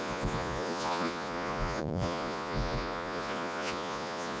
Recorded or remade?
remade